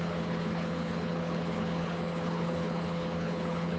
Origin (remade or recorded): remade